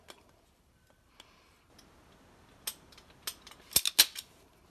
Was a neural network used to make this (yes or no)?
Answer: no